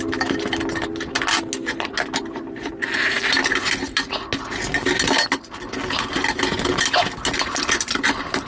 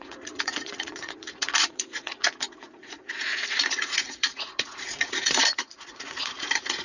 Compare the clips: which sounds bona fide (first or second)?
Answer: first